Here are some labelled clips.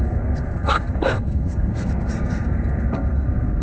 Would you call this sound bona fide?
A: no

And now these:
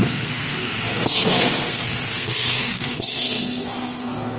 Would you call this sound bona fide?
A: no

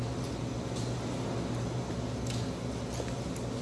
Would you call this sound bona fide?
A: yes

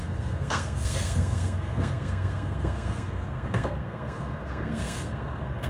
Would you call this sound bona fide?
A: no